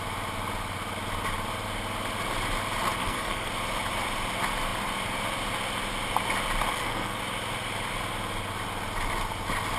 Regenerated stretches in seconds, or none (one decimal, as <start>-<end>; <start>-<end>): 3.0-3.5; 6.7-7.2